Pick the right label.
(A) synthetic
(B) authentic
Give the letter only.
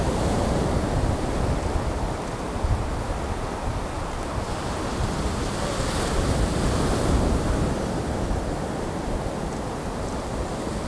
B